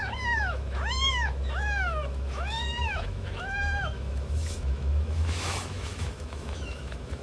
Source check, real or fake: fake